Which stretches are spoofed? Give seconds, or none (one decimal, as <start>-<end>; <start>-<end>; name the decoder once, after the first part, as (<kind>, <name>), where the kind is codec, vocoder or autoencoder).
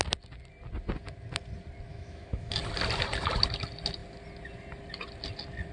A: 1.9-2.5 (autoencoder, DAC-VAE)